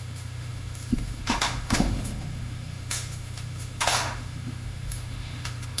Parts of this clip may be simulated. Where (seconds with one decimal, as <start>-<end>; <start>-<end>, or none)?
0.0-5.8